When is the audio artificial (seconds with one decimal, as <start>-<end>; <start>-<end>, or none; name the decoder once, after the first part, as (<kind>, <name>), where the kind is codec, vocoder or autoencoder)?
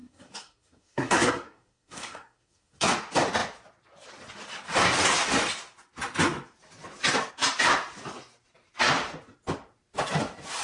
0.0-2.9 (codec, SNAC)